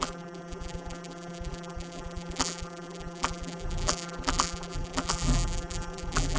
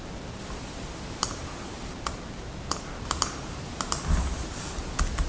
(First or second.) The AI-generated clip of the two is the first